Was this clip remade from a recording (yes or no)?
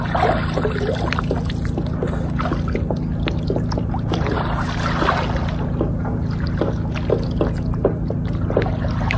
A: no